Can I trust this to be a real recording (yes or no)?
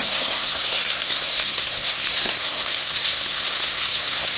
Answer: no